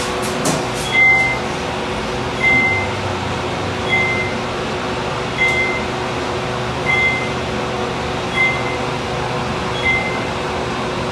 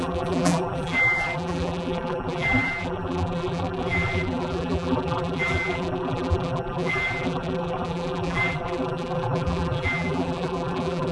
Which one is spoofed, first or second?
second